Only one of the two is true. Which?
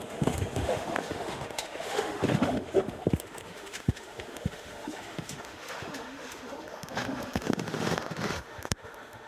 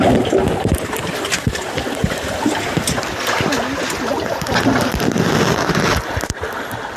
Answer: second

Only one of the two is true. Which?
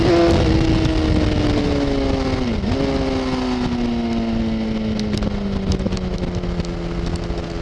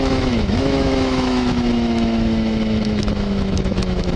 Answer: first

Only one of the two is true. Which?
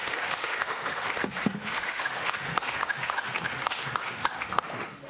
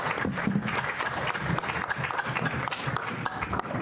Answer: second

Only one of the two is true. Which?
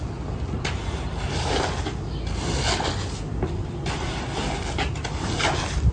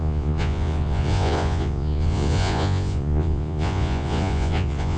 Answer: first